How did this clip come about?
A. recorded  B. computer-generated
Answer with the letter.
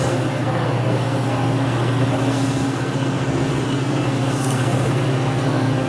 B